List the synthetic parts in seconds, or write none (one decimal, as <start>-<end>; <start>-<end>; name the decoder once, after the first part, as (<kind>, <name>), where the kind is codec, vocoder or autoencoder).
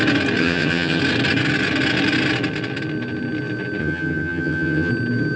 0.4-1.0 (vocoder, HiFi-GAN); 3.8-4.9